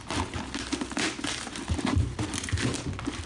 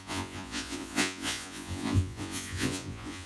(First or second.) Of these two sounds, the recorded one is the first